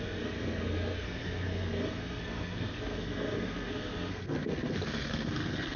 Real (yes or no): no